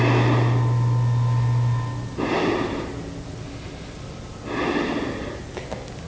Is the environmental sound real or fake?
real